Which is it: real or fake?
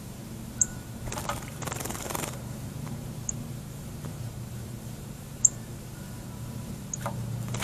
fake